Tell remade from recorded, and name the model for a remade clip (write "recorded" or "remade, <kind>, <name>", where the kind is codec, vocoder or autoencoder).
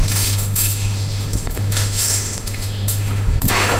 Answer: remade, autoencoder, DAC-VAE